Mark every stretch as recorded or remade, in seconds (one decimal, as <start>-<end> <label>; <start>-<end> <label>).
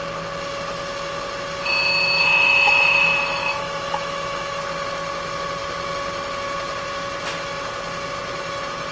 0.0-1.9 recorded; 1.9-4.6 remade; 4.6-8.9 recorded